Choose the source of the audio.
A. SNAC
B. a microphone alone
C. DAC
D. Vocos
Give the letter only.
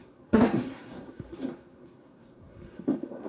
A